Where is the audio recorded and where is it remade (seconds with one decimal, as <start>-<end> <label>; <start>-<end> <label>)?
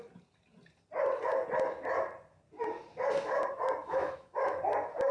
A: 0.0-3.8 recorded; 3.8-4.6 remade; 4.6-5.1 recorded